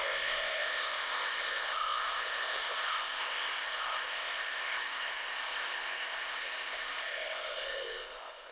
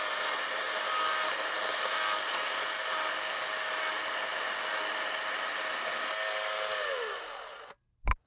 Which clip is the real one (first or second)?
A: second